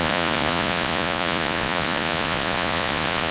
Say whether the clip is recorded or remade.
remade